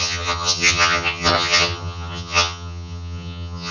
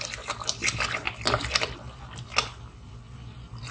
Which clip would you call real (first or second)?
second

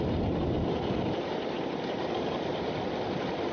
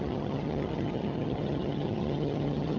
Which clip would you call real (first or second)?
first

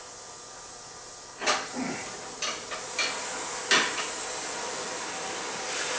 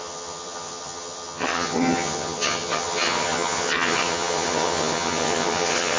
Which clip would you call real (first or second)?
first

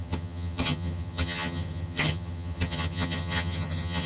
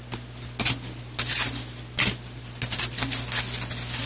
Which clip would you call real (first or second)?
second